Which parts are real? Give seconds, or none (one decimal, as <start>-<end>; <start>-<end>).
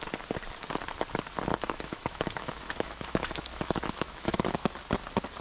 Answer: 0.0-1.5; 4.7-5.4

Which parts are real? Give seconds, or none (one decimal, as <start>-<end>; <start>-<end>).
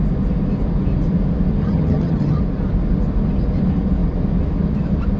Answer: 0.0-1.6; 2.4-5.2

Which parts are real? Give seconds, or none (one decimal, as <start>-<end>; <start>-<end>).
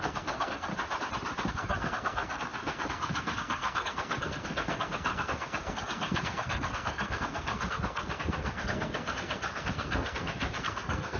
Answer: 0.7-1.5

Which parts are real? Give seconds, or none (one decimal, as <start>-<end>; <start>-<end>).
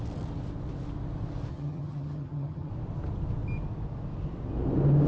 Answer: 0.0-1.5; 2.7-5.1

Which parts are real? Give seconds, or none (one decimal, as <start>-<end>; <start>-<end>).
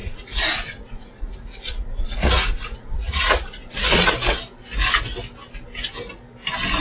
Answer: 4.1-6.8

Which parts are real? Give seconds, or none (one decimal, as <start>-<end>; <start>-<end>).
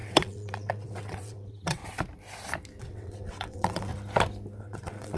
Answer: 1.8-2.8; 3.9-4.6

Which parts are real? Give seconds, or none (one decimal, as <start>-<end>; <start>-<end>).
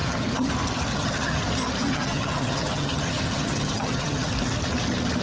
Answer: 0.5-0.9; 1.4-1.8; 4.3-5.2